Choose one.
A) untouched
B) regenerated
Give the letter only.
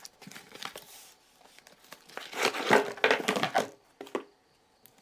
A